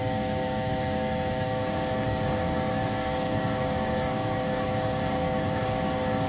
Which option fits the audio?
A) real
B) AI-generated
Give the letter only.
B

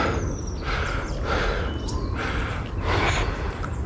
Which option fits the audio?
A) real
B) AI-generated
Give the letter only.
A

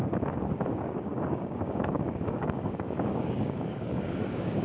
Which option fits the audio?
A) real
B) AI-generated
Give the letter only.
B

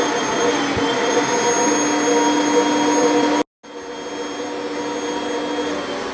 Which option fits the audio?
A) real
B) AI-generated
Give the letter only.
A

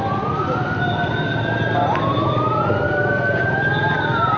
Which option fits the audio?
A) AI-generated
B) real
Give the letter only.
B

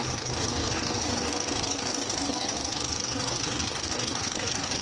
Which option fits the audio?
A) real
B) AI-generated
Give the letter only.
B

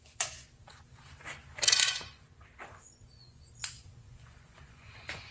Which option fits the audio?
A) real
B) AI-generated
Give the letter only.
B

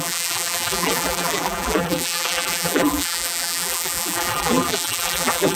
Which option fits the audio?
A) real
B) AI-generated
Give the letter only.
B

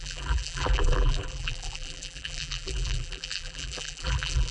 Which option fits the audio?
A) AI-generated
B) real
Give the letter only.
A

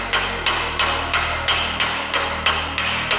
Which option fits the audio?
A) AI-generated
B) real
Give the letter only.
B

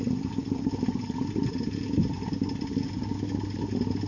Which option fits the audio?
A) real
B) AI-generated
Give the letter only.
A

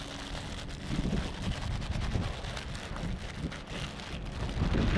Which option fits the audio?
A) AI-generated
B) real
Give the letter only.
B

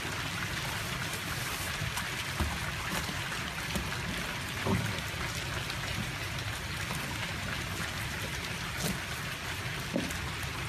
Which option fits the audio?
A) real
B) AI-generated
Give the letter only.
A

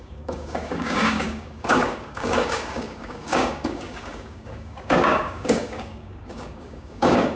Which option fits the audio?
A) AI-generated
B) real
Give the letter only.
A